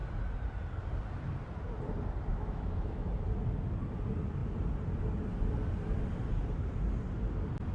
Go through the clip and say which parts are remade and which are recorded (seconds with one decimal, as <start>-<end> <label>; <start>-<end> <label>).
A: 0.0-2.3 recorded; 2.3-3.1 remade; 3.1-7.7 recorded